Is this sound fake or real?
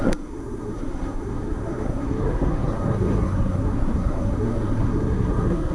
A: fake